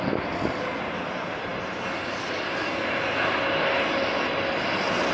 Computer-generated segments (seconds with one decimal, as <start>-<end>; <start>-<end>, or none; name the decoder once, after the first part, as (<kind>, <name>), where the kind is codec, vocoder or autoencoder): none